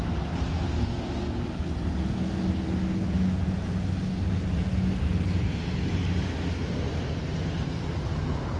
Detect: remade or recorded recorded